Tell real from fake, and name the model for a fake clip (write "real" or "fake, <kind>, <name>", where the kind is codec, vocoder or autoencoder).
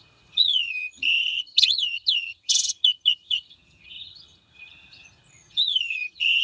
fake, vocoder, HiFi-GAN